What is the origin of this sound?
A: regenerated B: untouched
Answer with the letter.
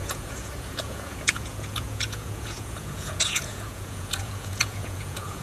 A